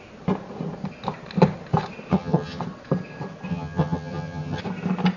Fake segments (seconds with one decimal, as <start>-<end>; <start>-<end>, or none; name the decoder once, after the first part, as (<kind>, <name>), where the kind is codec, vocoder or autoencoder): 2.1-2.6 (vocoder, HiFi-GAN); 3.5-4.6